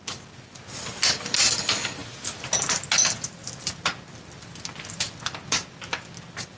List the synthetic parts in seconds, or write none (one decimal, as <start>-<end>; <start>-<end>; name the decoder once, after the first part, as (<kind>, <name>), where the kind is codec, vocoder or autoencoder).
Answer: none